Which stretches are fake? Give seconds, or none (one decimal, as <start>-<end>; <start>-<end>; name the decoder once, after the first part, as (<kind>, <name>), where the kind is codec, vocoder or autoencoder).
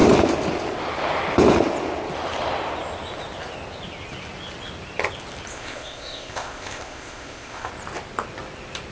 5.5-7.7 (codec, ZipCodec)